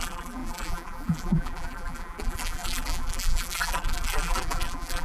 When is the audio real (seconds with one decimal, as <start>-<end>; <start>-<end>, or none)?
none